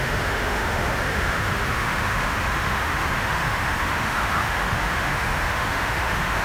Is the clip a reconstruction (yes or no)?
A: yes